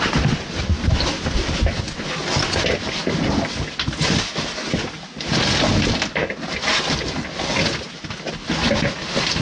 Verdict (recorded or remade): recorded